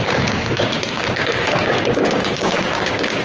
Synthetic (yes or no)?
yes